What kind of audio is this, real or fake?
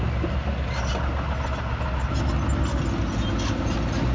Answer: real